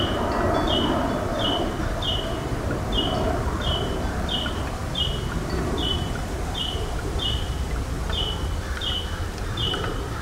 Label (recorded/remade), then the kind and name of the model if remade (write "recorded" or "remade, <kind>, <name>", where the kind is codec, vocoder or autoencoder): remade, vocoder, BigVGAN v2